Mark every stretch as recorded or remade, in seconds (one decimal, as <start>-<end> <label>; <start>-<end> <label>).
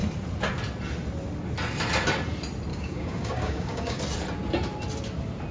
0.0-2.7 recorded; 2.7-4.0 remade; 4.0-5.5 recorded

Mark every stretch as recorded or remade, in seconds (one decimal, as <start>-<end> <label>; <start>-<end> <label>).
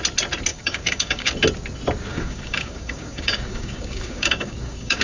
0.0-0.5 recorded; 0.5-1.3 remade; 1.3-2.1 recorded; 2.1-5.0 remade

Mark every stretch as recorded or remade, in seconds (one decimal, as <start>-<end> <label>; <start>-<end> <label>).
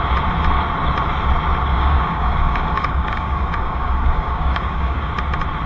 0.0-1.7 recorded; 1.7-5.1 remade; 5.1-5.7 recorded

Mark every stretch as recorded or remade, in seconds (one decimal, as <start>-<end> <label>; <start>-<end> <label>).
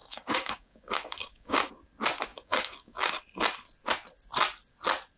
0.0-1.7 remade; 1.7-2.3 recorded; 2.3-3.1 remade; 3.1-5.2 recorded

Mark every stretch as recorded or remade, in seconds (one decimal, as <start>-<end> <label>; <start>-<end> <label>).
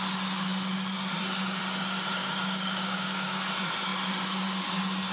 0.0-2.2 recorded; 2.2-3.5 remade; 3.5-5.1 recorded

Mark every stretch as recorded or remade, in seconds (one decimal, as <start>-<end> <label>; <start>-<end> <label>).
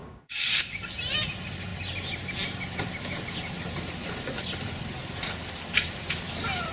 0.0-0.8 remade; 0.8-6.7 recorded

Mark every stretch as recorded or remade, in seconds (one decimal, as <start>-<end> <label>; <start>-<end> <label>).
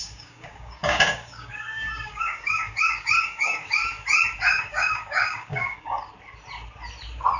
0.0-3.8 remade; 3.8-4.6 recorded; 4.6-6.1 remade; 6.1-7.4 recorded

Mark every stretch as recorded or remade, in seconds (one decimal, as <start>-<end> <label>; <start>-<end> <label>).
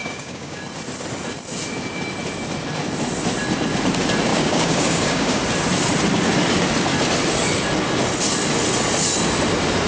0.0-0.6 remade; 0.6-4.3 recorded; 4.3-5.4 remade; 5.4-9.9 recorded